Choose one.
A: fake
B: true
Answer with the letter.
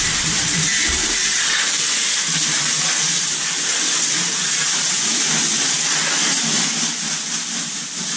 A